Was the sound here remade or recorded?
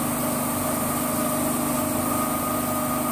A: recorded